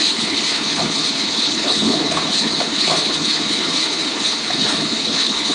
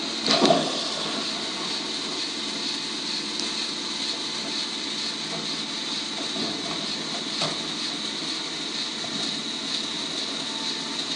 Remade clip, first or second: first